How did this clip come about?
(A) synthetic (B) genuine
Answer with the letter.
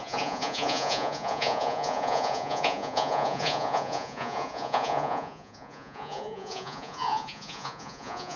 A